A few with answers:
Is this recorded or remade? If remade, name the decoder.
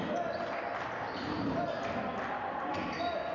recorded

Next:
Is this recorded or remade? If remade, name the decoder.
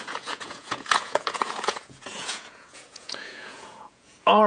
remade, vocoder, Vocos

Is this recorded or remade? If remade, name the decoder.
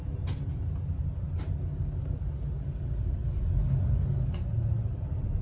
recorded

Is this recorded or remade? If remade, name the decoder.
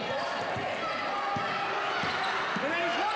recorded